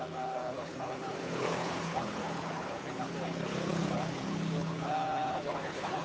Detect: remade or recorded remade